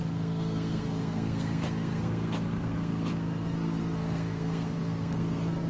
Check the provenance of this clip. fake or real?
fake